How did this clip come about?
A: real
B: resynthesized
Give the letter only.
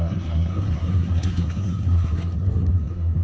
B